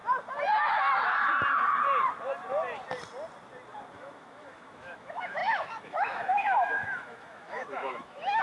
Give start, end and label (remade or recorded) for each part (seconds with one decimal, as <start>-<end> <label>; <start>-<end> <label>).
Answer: 0.0-3.9 recorded; 3.9-8.4 remade